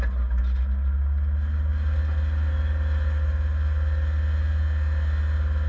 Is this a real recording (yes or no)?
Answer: yes